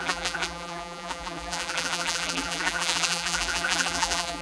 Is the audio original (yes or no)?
no